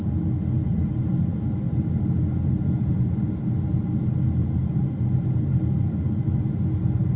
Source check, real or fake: real